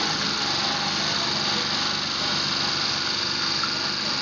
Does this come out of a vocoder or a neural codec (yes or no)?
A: no